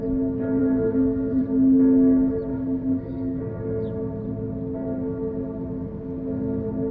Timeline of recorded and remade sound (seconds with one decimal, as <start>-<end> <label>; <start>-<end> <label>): 0.0-0.6 recorded; 0.6-1.4 remade; 1.4-2.5 recorded; 2.5-3.4 remade; 3.4-6.9 recorded